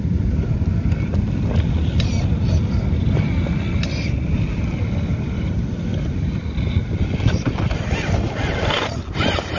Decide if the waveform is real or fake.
real